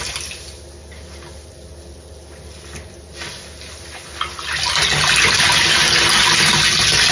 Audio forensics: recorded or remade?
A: recorded